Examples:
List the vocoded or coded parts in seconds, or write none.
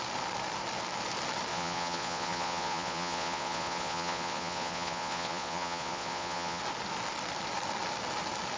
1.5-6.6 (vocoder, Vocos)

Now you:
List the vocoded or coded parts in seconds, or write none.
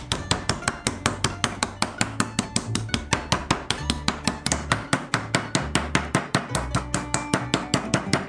none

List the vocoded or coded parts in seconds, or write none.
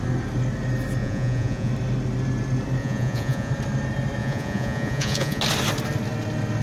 1.0-1.7 (vocoder, Vocos); 2.8-3.5; 4.2-5.4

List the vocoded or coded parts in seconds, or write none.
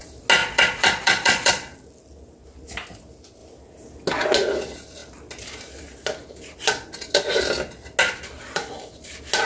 0.4-1.5 (vocoder, Vocos)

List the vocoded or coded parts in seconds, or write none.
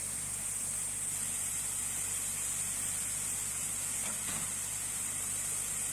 none